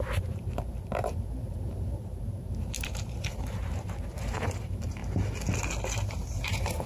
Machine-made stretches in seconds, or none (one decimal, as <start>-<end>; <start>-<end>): 0.0-5.0; 6.1-6.9